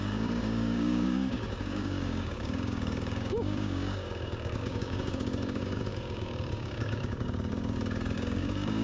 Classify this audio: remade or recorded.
remade